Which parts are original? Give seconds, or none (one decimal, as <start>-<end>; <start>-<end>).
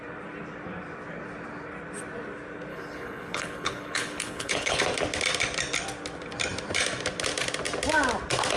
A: 0.0-2.7; 4.8-8.6